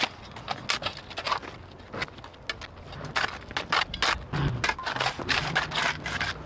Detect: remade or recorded recorded